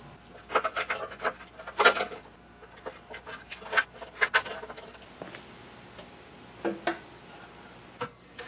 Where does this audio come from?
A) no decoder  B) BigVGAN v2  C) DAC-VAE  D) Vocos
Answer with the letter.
A